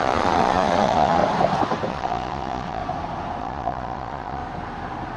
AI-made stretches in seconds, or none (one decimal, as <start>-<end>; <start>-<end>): 0.0-1.2; 1.9-2.8; 3.4-4.4

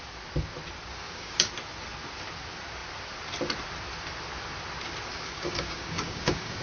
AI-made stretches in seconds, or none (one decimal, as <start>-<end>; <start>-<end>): 0.9-1.5; 5.1-6.6

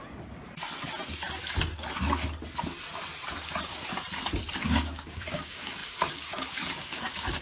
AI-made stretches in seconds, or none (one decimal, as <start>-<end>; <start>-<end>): 4.4-7.4

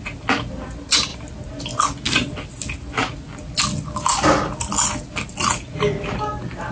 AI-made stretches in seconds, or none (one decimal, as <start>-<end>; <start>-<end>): none

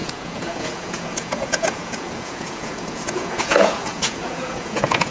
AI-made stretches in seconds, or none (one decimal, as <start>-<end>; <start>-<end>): 0.0-5.1

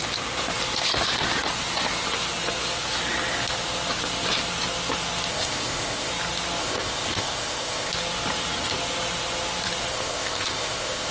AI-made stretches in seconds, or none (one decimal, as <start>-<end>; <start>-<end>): 5.3-6.1; 6.6-7.9; 9.9-11.1